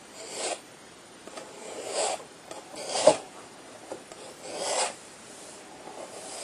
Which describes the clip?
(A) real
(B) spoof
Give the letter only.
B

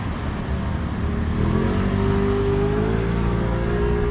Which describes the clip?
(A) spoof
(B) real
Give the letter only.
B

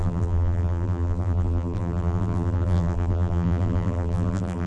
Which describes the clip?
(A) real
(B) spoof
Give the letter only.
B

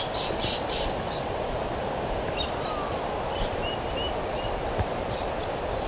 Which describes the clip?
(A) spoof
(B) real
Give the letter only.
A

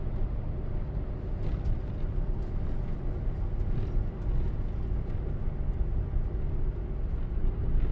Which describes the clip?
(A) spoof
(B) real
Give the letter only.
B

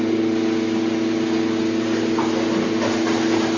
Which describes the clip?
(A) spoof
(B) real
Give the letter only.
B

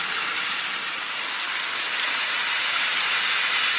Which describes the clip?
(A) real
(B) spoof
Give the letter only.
B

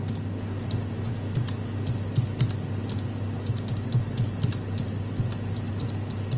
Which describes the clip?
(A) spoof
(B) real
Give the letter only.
B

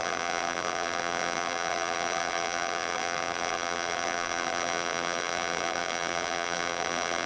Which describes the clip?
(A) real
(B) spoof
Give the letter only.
B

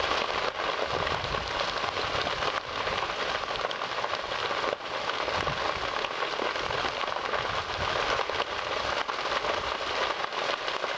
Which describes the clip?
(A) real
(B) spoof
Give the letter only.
A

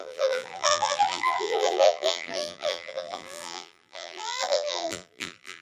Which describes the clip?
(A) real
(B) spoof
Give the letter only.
B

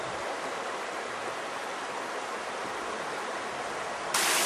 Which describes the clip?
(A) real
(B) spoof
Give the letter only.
A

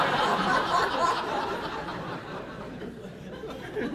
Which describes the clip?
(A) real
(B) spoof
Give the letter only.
B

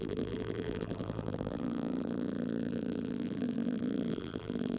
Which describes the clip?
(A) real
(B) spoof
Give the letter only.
B